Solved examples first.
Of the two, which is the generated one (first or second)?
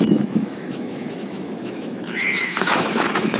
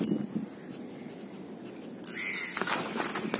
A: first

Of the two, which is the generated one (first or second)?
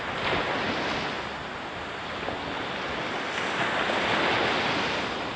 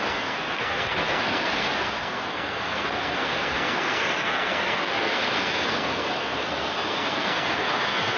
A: second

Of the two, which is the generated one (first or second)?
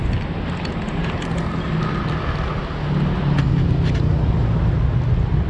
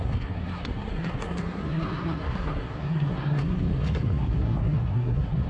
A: second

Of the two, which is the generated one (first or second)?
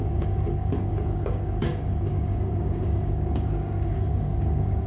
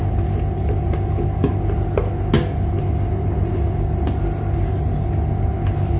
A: first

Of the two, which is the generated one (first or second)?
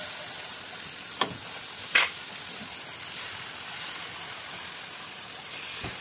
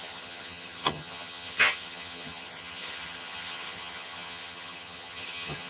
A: second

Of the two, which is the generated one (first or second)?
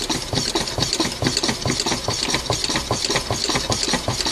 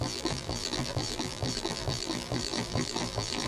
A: second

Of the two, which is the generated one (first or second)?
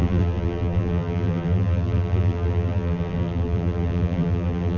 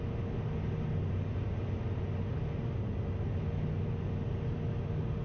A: first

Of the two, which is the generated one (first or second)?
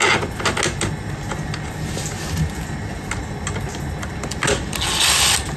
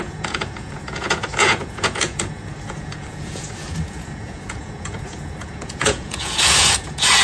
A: second